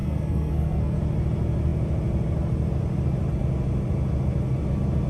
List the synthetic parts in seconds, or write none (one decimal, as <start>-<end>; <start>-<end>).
0.0-1.0